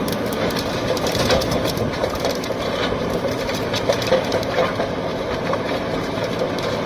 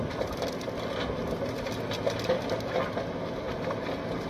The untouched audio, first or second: second